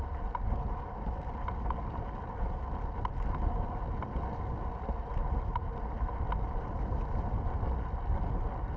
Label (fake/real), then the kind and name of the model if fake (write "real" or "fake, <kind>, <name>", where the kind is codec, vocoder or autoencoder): real